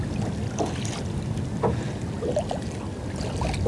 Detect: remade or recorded recorded